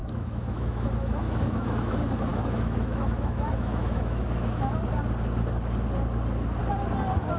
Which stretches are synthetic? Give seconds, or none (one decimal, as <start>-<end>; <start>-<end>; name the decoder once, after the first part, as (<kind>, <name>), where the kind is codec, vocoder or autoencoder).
0.0-1.9 (autoencoder, DAC-VAE); 2.3-4.8